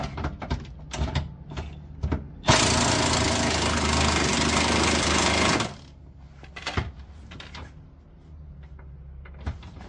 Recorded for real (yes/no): yes